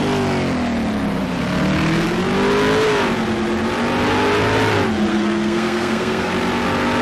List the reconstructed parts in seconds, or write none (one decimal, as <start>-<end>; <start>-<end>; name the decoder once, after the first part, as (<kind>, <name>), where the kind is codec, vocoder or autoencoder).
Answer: 5.1-6.3 (codec, SNAC)